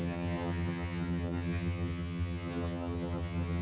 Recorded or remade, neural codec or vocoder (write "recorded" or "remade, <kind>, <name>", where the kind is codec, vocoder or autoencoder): remade, vocoder, HiFi-GAN